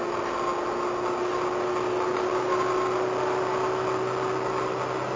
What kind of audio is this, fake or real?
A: real